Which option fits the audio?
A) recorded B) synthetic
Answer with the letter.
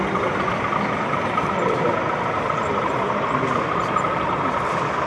A